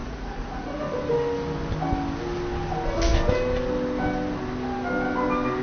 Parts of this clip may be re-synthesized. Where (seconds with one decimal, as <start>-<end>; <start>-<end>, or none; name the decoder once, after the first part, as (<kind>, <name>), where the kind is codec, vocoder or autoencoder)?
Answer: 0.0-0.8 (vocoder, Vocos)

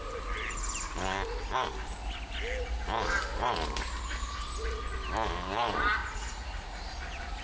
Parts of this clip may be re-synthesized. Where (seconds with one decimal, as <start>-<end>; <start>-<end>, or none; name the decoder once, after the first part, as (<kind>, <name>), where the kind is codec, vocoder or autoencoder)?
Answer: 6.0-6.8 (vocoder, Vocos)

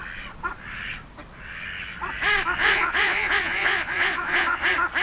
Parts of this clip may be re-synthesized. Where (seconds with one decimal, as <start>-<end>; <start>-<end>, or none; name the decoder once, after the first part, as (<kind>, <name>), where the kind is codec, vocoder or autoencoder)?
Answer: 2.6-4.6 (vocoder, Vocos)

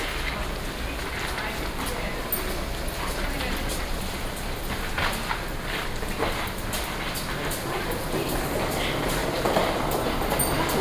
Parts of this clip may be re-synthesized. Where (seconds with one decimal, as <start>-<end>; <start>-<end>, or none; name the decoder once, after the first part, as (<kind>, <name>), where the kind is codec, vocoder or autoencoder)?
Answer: none

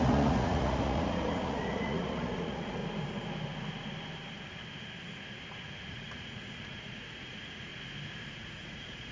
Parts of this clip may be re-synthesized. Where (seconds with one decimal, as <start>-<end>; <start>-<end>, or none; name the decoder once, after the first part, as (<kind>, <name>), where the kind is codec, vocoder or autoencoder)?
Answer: 0.0-2.8 (vocoder, Vocos); 5.9-7.7; 8.3-9.1

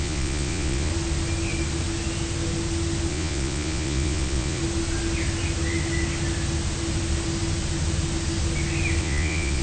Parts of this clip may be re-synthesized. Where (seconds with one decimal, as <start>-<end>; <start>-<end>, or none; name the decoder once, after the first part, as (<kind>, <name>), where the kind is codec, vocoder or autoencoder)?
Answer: 0.0-0.9 (vocoder, Vocos); 3.1-4.6; 9.0-9.6